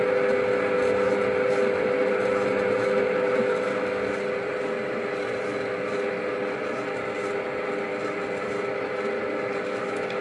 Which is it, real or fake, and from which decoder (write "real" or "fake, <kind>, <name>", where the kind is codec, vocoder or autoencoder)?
real